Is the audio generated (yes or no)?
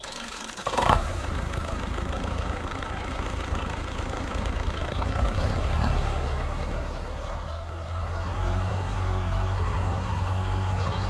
yes